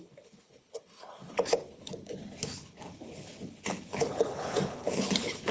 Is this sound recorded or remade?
remade